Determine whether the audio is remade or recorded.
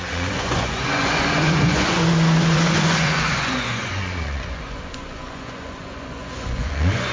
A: remade